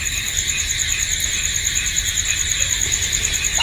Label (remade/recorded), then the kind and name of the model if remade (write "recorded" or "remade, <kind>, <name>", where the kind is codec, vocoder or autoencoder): recorded